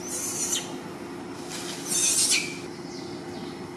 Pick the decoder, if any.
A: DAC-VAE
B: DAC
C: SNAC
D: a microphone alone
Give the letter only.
D